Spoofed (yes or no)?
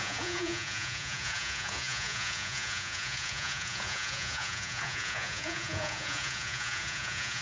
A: yes